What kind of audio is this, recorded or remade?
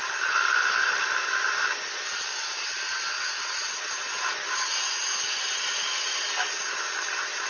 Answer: remade